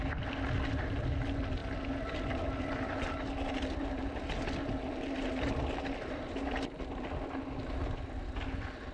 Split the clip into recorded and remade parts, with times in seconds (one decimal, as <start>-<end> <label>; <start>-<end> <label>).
0.0-8.9 recorded